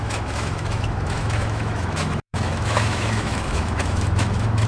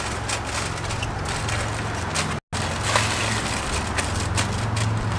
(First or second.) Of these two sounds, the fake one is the first